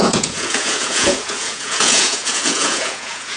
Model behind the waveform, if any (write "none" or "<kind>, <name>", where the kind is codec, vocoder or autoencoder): vocoder, Vocos